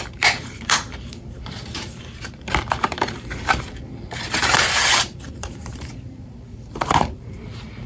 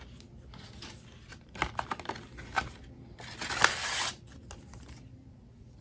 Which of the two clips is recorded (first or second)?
second